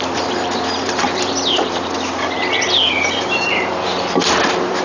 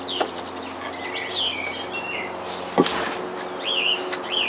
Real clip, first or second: second